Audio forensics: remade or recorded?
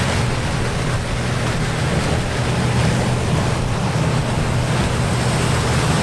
recorded